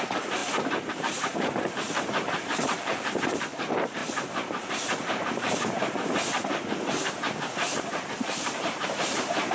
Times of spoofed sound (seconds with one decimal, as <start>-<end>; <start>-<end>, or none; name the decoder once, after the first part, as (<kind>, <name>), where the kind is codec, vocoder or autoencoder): 0.0-0.4 (vocoder, BigVGAN v2); 0.9-4.0; 7.8-9.5